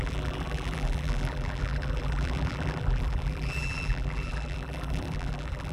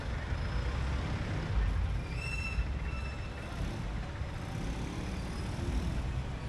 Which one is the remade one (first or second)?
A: first